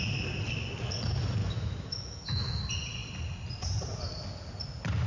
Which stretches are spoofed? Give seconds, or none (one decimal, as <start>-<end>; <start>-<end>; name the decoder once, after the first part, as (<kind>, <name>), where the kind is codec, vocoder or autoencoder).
1.4-2.6 (autoencoder, DAC-VAE)